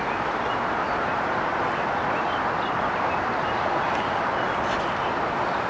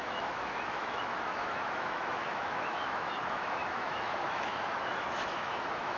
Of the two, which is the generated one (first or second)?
second